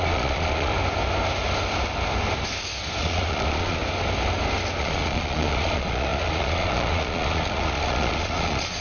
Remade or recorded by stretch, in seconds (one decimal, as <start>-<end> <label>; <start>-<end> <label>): 0.0-0.7 remade; 0.7-3.0 recorded; 3.0-3.8 remade; 3.8-4.8 recorded; 4.8-8.8 remade